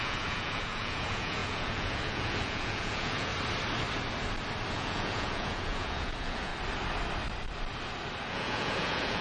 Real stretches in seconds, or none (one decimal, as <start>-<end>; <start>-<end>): 3.3-4.7; 6.5-8.3